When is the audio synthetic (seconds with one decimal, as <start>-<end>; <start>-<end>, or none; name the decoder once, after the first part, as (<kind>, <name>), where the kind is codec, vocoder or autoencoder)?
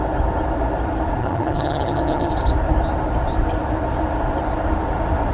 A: 1.2-2.3 (vocoder, HiFi-GAN)